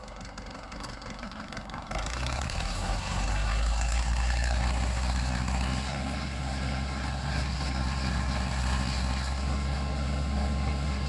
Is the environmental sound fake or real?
fake